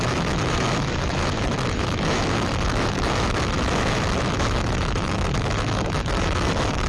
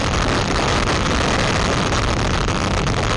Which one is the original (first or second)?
second